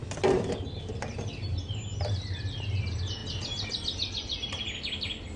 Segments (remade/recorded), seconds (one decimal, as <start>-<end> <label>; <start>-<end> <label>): 0.0-5.4 recorded